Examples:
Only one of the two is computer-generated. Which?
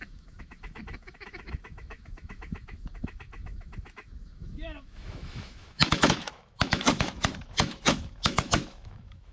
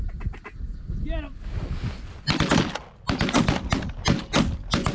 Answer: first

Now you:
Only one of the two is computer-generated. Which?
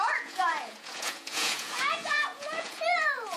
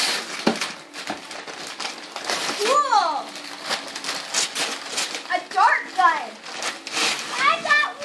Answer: first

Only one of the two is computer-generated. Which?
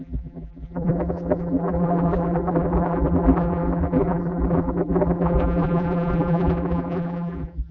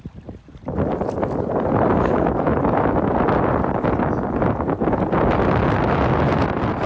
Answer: first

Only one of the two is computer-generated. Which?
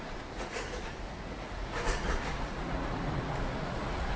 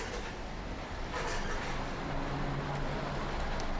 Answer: first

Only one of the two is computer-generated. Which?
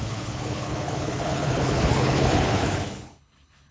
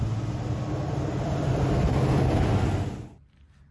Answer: first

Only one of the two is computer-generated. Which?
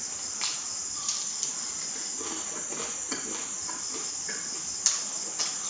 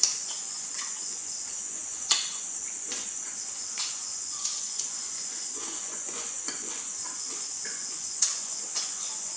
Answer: second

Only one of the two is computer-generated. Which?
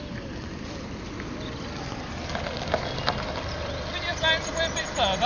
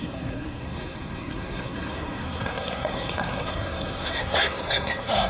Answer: second